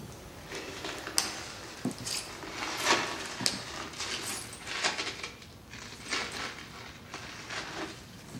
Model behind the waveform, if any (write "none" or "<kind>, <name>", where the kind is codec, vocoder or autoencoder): none